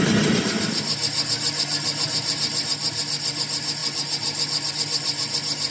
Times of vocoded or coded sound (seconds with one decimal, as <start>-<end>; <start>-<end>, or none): none